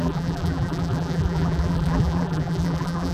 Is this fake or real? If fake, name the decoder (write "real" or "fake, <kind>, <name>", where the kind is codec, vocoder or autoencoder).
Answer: fake, vocoder, BigVGAN v2